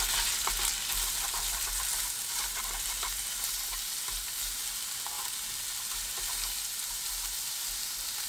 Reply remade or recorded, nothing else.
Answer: recorded